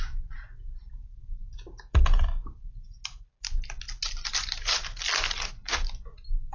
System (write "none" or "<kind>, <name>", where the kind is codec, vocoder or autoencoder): none